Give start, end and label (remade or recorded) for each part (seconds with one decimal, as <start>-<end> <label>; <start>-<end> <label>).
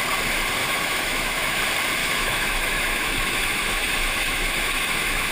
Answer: 0.0-0.6 recorded; 0.6-1.6 remade; 1.6-2.0 recorded; 2.0-5.3 remade